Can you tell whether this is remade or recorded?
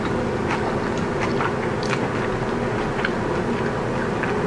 recorded